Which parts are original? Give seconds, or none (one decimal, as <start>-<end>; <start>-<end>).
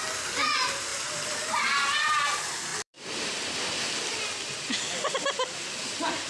0.0-2.7; 4.2-6.3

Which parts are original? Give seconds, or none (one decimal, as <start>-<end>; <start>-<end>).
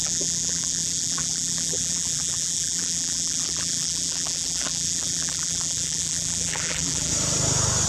7.1-7.9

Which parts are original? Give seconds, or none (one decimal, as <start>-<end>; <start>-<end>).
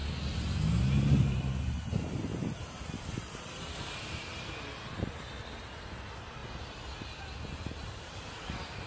0.0-0.8; 2.3-3.1; 4.3-5.6; 6.4-7.2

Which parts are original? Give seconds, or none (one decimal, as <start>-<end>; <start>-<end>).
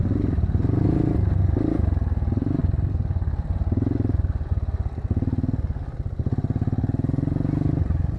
0.6-8.2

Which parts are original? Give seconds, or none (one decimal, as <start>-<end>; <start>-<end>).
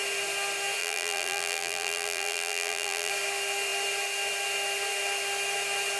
0.0-0.8; 3.1-6.0